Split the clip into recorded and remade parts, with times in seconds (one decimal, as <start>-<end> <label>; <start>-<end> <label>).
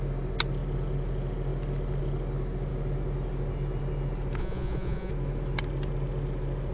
0.0-4.4 recorded; 4.4-5.1 remade; 5.1-6.7 recorded